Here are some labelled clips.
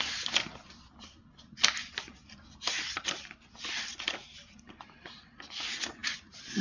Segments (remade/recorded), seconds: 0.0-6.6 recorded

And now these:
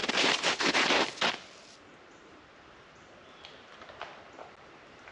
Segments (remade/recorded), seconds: 0.0-3.1 remade; 3.1-5.1 recorded

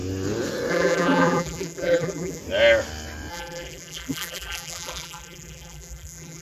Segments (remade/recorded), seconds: 0.0-0.7 recorded; 0.7-2.4 remade; 2.4-3.3 recorded; 3.3-6.4 remade

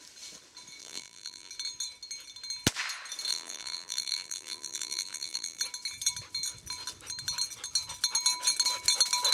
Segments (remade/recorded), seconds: 0.0-0.8 recorded; 0.8-1.5 remade; 1.5-3.3 recorded; 3.3-5.6 remade; 5.6-9.3 recorded

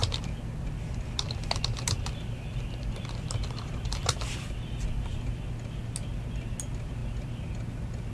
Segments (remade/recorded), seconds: 0.0-4.2 remade; 4.2-8.1 recorded